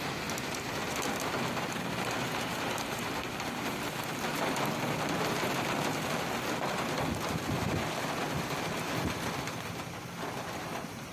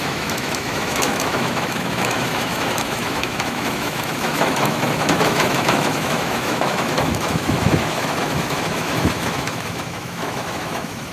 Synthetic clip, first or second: second